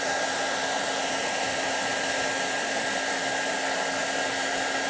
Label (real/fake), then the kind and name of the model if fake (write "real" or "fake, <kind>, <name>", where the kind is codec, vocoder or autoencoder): real